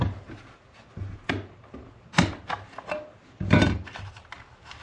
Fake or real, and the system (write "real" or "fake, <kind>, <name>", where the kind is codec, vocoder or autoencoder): real